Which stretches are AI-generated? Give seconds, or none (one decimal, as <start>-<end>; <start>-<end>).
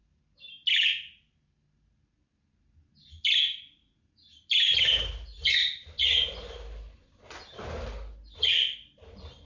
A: none